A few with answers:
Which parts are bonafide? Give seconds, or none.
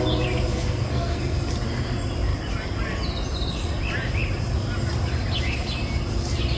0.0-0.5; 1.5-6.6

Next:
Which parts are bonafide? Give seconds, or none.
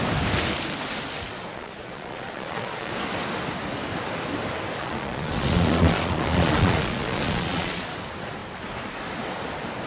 0.0-1.5; 2.9-4.8; 7.9-9.9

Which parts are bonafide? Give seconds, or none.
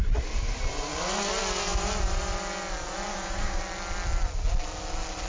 0.0-3.1; 3.6-5.3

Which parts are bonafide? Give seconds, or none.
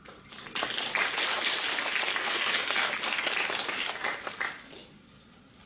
0.0-2.2; 2.9-5.7